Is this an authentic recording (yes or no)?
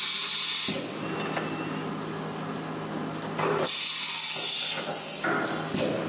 yes